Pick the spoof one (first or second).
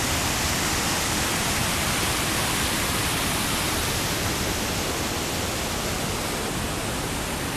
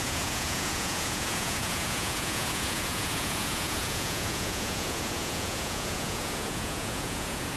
second